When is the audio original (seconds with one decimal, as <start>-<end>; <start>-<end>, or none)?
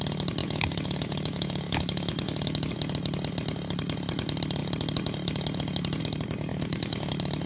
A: 0.0-0.4; 2.7-6.5; 7.1-7.5